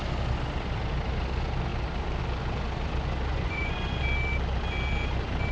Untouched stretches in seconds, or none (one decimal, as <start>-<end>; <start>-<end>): 0.0-3.3; 4.0-5.5